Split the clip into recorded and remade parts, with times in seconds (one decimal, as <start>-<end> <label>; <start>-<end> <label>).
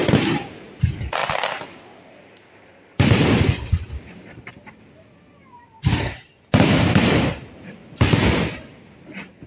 0.0-1.2 recorded; 1.2-6.0 remade; 6.0-8.2 recorded; 8.2-9.1 remade; 9.1-9.5 recorded